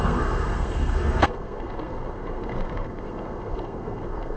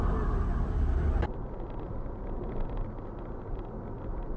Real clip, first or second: second